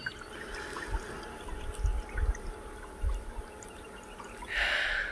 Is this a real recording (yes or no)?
yes